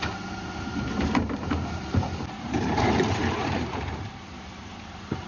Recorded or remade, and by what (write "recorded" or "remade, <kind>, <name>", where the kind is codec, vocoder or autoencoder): remade, vocoder, BigVGAN v2